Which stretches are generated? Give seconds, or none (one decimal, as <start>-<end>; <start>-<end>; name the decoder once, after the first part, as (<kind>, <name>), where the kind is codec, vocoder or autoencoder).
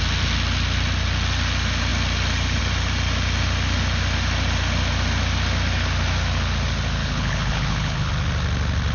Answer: 7.0-8.1 (codec, HILCodec)